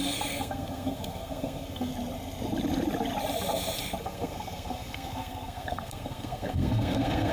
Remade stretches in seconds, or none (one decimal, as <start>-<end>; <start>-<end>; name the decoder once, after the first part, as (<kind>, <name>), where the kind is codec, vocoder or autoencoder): 0.0-1.9 (codec, SNAC); 4.0-7.3